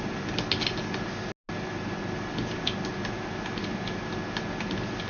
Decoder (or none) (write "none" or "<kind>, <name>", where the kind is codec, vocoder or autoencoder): none